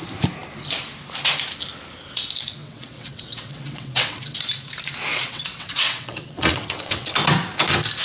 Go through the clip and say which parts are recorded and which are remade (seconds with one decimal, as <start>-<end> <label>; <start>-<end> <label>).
0.0-2.6 recorded; 2.6-4.4 remade; 4.4-5.1 recorded; 5.1-7.1 remade; 7.1-8.0 recorded